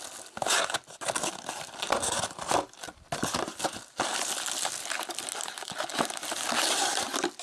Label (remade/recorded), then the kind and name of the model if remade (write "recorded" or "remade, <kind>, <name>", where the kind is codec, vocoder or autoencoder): recorded